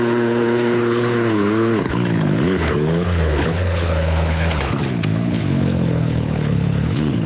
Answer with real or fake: fake